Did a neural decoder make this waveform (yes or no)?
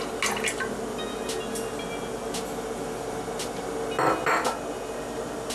no